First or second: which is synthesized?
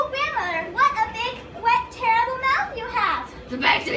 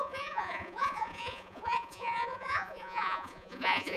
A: second